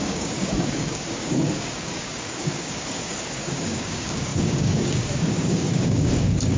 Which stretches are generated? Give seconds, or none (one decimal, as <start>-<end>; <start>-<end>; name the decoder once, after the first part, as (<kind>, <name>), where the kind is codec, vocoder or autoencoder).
0.0-6.6 (codec, DAC)